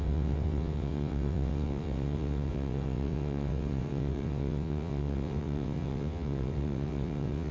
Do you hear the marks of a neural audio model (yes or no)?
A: yes